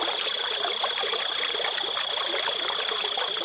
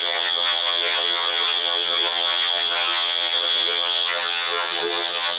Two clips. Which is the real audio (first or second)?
first